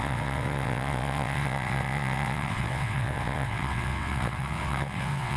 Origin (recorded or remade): remade